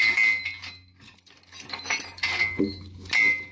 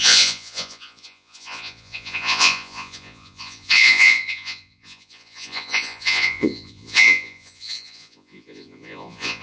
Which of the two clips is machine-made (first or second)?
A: second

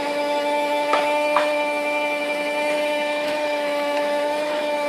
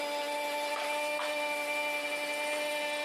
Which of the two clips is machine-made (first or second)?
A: first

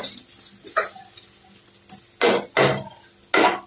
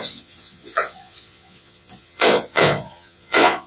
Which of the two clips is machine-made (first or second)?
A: second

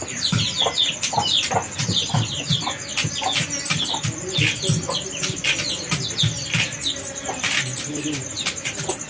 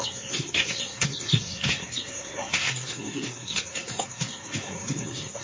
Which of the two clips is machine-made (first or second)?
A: second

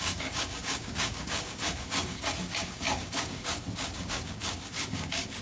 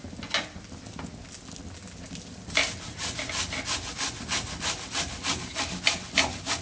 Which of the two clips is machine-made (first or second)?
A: first